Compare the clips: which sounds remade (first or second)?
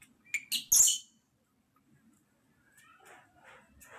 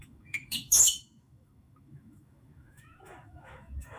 second